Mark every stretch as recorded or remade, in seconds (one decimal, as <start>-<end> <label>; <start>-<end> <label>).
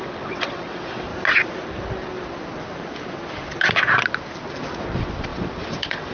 0.0-1.1 remade; 1.1-4.8 recorded; 4.8-6.1 remade